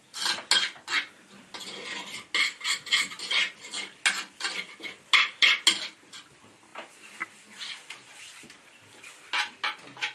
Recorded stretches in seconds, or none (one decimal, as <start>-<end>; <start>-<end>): 0.0-10.1